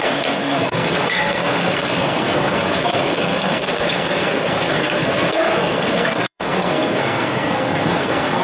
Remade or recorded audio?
remade